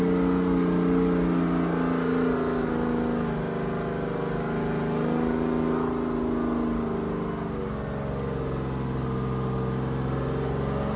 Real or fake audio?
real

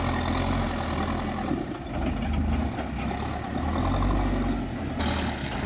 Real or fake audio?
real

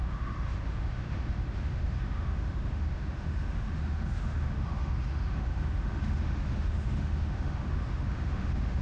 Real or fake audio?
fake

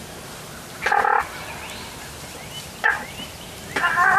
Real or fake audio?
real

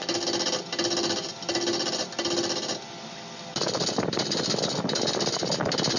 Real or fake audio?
real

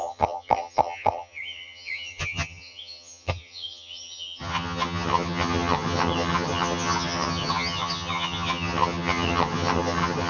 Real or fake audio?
fake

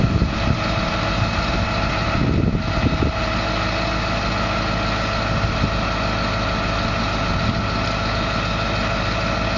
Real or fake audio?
real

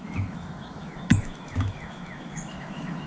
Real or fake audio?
fake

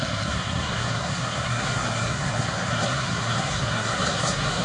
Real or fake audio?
fake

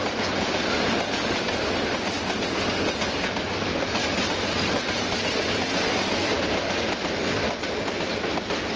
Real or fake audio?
real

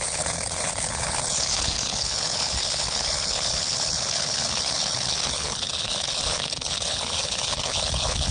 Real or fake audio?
fake